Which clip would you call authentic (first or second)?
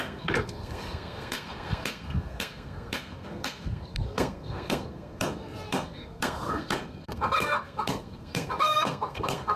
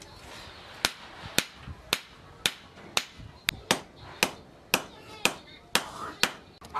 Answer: second